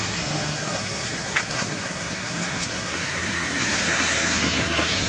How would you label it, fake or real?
fake